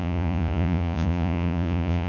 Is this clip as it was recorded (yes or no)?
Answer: no